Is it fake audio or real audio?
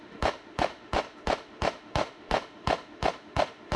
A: fake